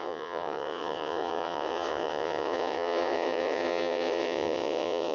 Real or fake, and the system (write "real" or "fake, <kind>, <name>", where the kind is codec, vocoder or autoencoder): fake, vocoder, WaveNeXt